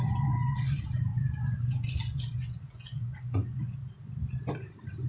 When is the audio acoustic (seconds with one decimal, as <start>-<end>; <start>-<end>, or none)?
3.8-5.1